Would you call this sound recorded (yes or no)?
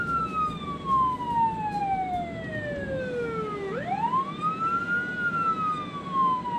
yes